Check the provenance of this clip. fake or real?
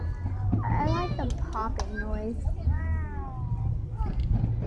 real